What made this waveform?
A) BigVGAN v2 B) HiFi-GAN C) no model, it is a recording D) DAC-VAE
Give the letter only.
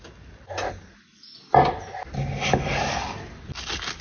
C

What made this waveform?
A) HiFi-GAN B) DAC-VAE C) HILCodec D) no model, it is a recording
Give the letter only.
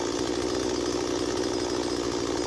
D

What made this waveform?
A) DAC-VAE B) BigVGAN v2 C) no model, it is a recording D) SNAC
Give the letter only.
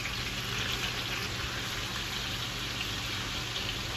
C